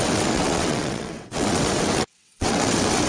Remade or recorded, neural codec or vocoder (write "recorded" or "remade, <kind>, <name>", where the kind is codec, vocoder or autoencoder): remade, vocoder, WaveNeXt